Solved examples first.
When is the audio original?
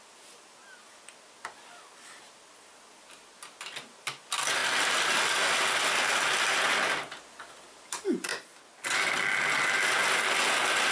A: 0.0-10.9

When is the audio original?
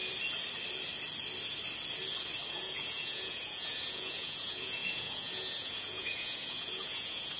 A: 0.0-2.5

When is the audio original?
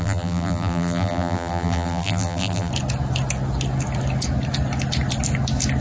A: 2.7-5.8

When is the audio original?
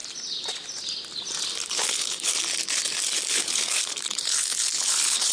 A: 0.0-1.7; 2.3-3.3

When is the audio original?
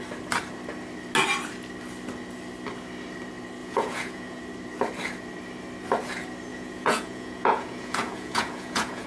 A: 0.0-3.6; 4.4-6.5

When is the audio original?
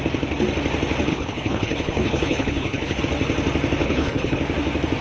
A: 0.0-1.1; 3.0-3.8; 4.4-5.0